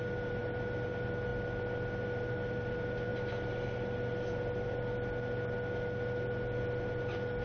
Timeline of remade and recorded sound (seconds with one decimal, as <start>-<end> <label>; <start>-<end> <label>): 0.0-7.4 recorded